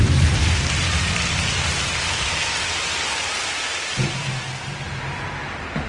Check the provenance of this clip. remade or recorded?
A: recorded